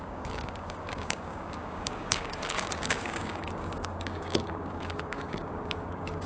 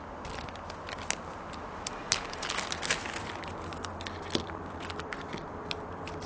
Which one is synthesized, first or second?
first